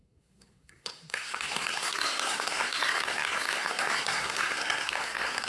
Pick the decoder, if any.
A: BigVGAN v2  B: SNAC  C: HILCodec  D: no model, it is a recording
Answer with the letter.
B